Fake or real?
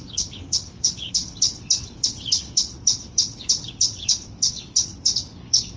fake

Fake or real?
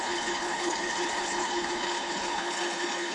fake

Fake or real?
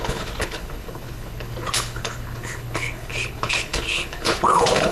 fake